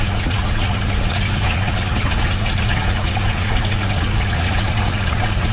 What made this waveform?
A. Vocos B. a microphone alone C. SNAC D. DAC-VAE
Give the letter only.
A